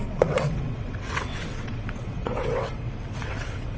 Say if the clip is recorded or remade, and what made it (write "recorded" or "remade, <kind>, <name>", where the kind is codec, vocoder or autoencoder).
remade, vocoder, WaveNeXt